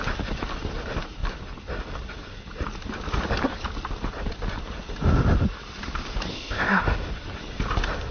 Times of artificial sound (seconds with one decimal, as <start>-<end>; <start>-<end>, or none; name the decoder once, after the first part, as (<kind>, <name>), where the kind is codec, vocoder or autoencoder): 6.3-6.8 (codec, ZipCodec)